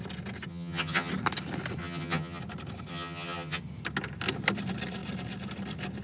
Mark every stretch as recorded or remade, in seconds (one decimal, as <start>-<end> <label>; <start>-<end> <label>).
0.0-0.5 recorded; 0.5-1.1 remade; 1.1-1.8 recorded; 1.8-2.4 remade; 2.4-2.9 recorded; 2.9-3.6 remade; 3.6-6.0 recorded